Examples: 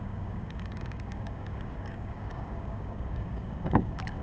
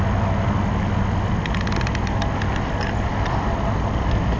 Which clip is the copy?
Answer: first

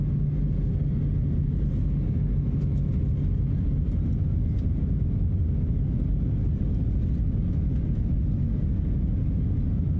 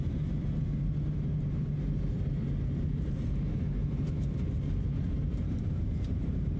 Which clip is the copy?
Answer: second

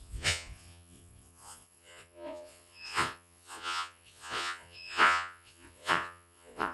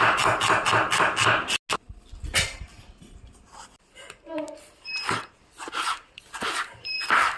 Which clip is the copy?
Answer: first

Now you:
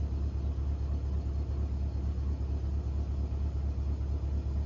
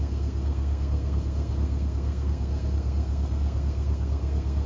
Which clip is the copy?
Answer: second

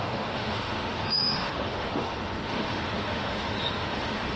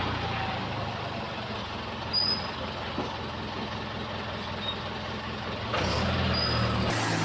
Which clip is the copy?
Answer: first